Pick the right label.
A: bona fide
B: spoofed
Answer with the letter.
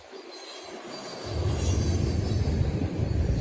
A